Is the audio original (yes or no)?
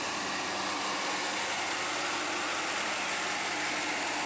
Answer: yes